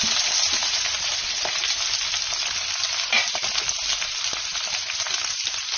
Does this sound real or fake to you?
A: real